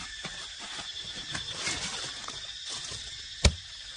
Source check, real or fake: real